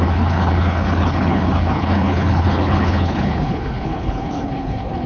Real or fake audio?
fake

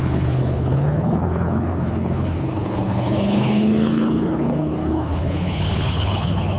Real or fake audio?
fake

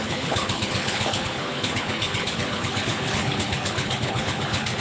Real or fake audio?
fake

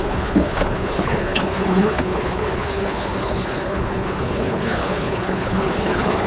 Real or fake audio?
fake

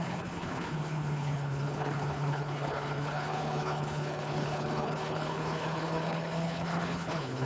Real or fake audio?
fake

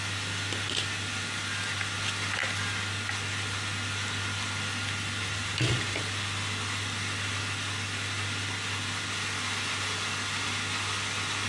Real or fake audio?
real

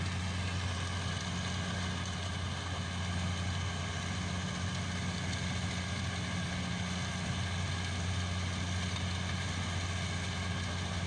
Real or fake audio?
real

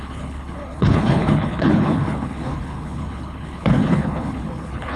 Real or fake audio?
fake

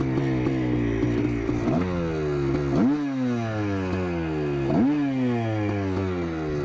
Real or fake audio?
real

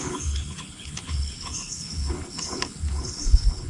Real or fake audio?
fake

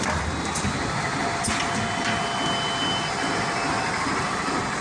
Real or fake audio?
real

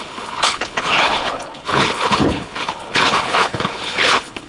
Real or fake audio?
fake